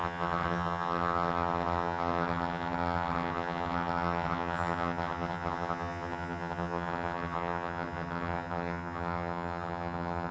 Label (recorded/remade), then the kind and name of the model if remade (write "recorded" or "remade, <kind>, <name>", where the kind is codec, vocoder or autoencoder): remade, vocoder, HiFi-GAN